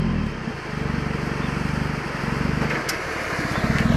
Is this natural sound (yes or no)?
yes